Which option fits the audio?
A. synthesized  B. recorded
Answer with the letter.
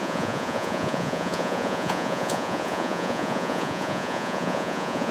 A